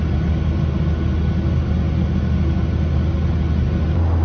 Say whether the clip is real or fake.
real